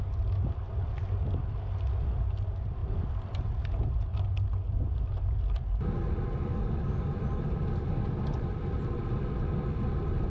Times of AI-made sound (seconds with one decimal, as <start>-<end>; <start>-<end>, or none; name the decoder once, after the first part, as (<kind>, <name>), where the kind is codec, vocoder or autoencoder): none